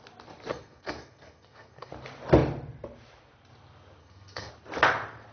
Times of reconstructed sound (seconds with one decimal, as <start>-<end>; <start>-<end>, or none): 0.5-1.9; 4.0-4.5